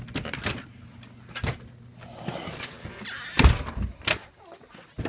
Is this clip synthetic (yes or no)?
no